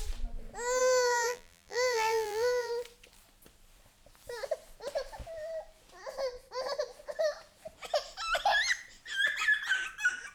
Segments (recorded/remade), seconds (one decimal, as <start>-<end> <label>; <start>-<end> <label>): 0.0-0.8 recorded; 0.8-2.7 remade; 2.7-10.3 recorded